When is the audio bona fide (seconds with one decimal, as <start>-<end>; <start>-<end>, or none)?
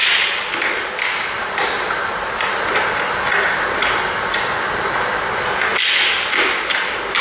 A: 0.0-7.2